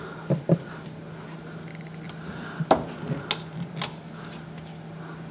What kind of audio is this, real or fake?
real